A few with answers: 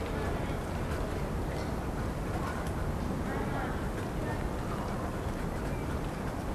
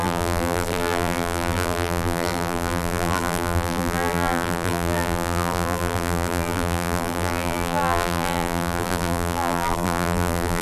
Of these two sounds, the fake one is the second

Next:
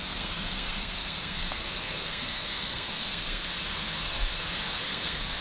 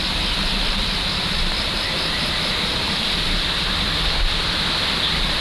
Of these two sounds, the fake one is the first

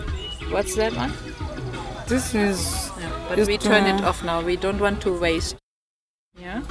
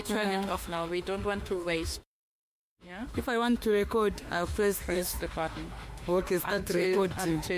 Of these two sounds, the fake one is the second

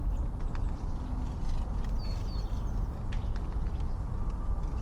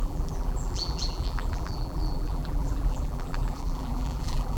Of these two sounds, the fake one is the second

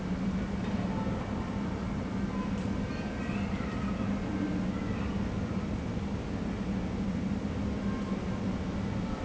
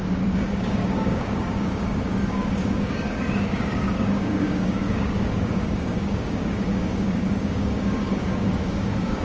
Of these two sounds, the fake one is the second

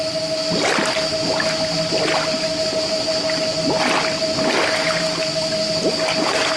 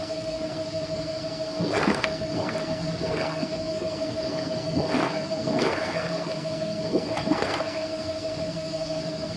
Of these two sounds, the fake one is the second